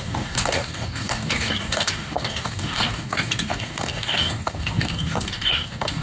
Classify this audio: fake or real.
fake